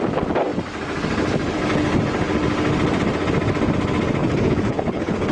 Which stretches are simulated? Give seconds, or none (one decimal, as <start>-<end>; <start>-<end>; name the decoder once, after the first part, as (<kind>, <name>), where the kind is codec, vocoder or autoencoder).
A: 4.2-5.3 (codec, HILCodec)